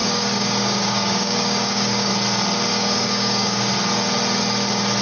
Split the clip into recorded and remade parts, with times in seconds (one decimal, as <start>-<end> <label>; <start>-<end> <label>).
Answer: 0.0-2.1 remade; 2.1-2.7 recorded; 2.7-3.7 remade; 3.7-5.0 recorded